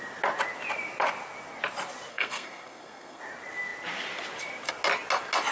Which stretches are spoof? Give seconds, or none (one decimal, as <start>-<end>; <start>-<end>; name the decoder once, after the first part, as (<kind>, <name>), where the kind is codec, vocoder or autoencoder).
2.1-3.2 (codec, SNAC)

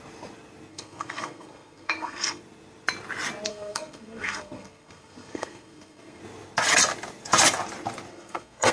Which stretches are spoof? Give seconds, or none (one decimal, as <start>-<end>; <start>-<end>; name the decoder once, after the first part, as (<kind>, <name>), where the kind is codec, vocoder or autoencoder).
0.7-2.4 (codec, SNAC); 3.5-6.2; 8.1-8.7

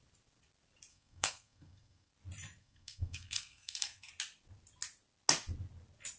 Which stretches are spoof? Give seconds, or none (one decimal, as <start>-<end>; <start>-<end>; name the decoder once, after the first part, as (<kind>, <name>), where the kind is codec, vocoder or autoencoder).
0.9-2.1 (codec, SNAC); 2.6-4.1

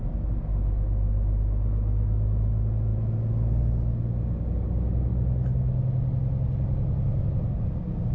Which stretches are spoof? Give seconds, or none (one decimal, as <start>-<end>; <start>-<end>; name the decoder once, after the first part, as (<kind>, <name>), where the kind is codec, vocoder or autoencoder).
none

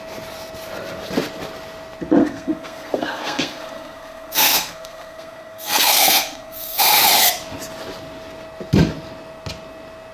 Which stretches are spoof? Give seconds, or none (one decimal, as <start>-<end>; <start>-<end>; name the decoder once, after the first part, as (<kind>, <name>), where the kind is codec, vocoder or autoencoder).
2.2-6.8 (codec, SNAC)

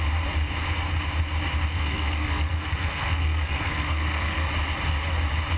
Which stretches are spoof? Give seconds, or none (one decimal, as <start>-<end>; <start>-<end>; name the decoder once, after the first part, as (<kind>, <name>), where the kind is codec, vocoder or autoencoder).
1.7-4.5 (codec, SNAC)

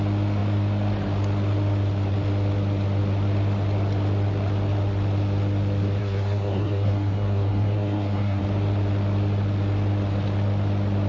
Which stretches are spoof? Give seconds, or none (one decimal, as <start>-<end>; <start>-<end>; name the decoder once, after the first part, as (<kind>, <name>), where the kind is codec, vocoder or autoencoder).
6.0-8.4 (codec, SNAC)